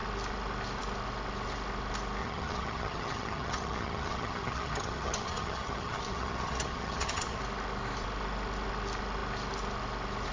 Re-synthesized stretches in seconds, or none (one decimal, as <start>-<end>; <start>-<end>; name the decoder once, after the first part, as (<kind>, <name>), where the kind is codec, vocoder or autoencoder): 2.2-7.4 (vocoder, HiFi-GAN)